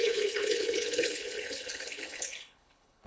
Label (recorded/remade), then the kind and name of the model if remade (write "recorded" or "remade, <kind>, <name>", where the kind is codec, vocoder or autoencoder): remade, codec, HILCodec